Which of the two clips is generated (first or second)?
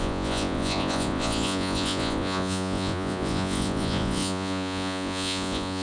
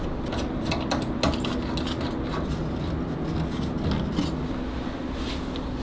first